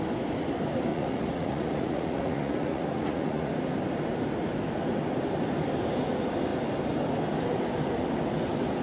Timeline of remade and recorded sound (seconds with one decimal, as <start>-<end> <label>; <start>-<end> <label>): 0.0-0.9 recorded; 0.9-3.5 remade; 3.5-8.8 recorded